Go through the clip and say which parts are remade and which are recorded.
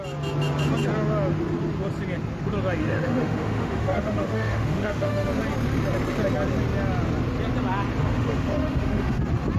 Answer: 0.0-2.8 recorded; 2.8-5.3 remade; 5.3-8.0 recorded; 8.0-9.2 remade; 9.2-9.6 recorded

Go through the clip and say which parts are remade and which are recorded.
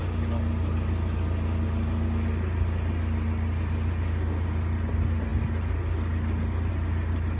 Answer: 0.0-7.4 recorded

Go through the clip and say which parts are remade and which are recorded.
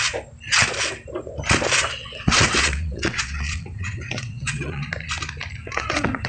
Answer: 0.0-2.0 recorded; 2.0-4.9 remade; 4.9-5.6 recorded; 5.6-6.3 remade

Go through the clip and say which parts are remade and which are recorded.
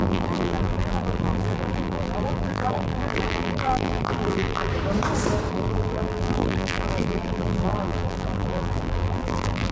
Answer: 0.0-4.7 remade; 4.7-5.5 recorded; 5.5-9.7 remade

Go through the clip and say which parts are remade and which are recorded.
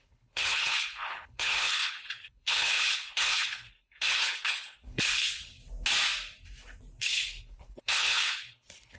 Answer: 0.0-5.5 remade; 5.5-7.0 recorded; 7.0-9.0 remade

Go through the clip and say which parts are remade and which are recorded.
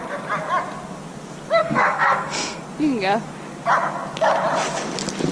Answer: 0.0-1.6 recorded; 1.6-2.6 remade; 2.6-5.3 recorded